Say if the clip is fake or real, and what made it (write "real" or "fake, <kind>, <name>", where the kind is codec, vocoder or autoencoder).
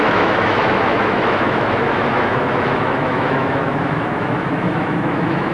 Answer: fake, autoencoder, DAC-VAE